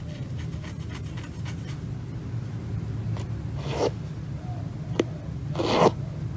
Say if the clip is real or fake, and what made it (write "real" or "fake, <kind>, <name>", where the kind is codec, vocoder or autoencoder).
real